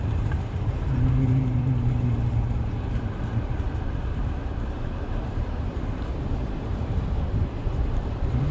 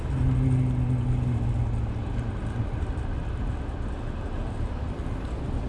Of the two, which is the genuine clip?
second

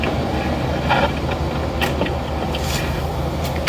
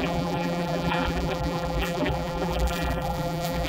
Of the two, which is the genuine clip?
first